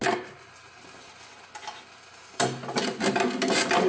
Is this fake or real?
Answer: real